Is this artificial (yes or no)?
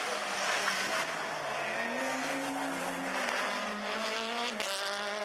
no